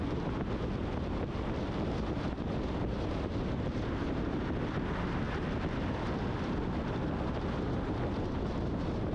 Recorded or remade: recorded